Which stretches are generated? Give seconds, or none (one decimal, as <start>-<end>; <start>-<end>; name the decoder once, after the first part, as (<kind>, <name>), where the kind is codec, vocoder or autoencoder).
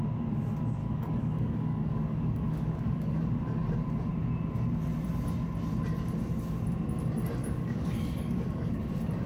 0.8-3.2 (codec, DAC); 7.4-8.9